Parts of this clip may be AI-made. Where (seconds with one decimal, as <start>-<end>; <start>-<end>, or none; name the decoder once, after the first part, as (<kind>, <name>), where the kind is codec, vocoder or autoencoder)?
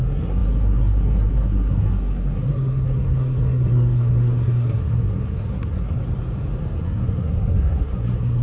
0.0-6.0 (codec, SNAC); 6.8-8.4